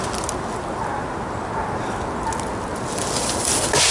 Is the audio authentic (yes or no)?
yes